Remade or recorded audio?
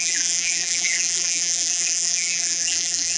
remade